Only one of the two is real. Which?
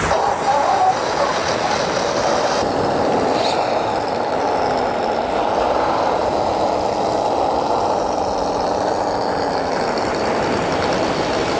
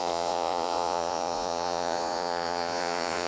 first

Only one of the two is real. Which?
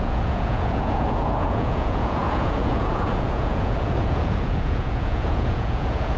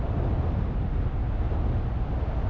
second